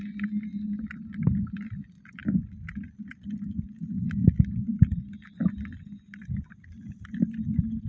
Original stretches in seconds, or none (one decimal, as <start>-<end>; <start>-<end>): 0.0-7.9